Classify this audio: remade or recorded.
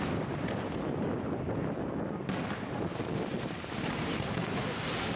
recorded